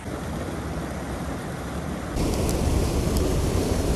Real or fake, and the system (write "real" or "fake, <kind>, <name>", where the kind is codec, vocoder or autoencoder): real